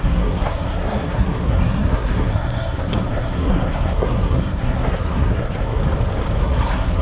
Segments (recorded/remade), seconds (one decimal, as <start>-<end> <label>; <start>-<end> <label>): 0.0-5.8 remade; 5.8-6.4 recorded; 6.4-7.0 remade